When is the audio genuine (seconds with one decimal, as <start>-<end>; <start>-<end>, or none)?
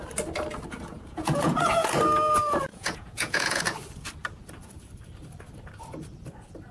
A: 0.0-0.9; 1.9-2.7; 3.6-6.7